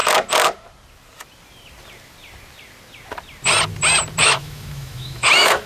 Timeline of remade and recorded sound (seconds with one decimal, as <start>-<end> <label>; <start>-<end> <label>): 0.0-4.2 recorded; 4.2-5.7 remade